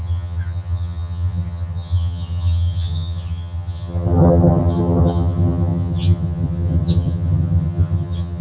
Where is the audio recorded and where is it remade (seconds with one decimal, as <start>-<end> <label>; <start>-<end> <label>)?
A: 0.0-8.4 remade